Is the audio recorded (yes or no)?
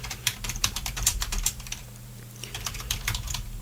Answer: no